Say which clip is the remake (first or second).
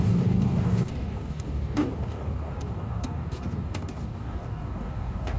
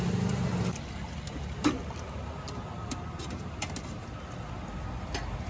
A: first